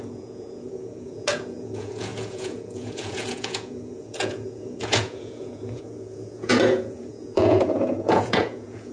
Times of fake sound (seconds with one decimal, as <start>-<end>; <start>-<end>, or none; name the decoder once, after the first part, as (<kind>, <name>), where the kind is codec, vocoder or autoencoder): 0.0-8.9 (vocoder, Vocos)